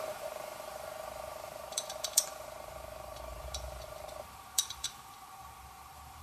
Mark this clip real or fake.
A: fake